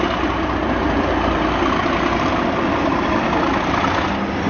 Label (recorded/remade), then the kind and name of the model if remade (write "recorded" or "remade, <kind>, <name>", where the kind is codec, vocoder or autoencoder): recorded